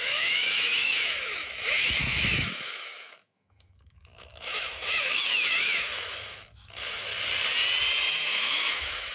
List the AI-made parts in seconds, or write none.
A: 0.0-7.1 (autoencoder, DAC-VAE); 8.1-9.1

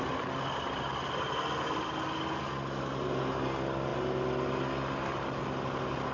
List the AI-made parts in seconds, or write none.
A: none

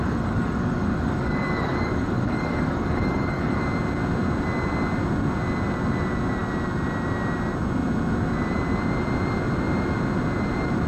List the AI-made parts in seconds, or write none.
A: 0.0-3.6 (codec, DAC)

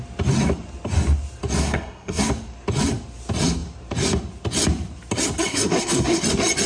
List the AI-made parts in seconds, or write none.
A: 1.6-2.2 (codec, SNAC); 5.5-6.2

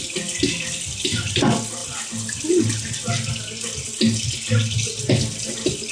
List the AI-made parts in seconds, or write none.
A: none

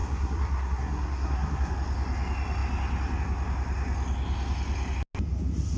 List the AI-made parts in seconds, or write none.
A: 0.0-1.7 (codec, SNAC)

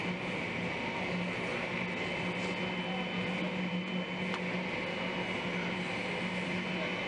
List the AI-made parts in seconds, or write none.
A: none